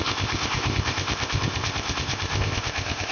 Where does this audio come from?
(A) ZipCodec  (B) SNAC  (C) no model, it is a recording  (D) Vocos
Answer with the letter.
A